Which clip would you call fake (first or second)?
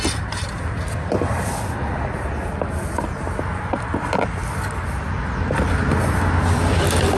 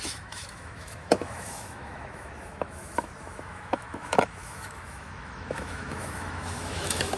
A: second